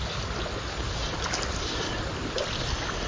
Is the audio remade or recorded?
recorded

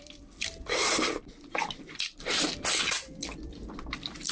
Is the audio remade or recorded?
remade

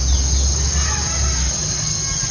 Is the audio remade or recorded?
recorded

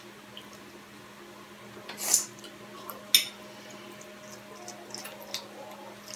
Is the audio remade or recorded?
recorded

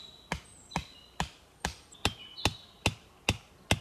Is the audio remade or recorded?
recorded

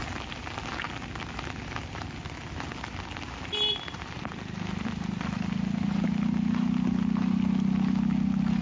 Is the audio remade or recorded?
recorded